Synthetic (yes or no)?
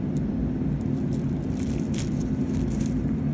yes